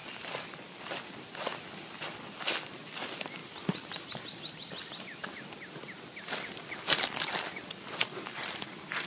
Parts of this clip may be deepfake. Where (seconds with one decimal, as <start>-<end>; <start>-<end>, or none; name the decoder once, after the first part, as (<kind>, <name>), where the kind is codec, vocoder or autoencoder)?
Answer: 3.4-5.5 (vocoder, BigVGAN v2)